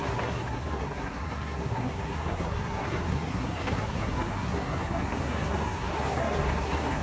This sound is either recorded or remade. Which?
remade